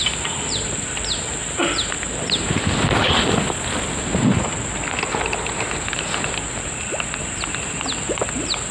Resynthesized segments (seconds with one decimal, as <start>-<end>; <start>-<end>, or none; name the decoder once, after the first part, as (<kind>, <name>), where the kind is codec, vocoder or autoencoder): none